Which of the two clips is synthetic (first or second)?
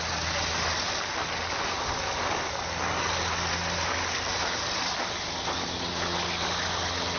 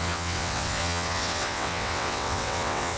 second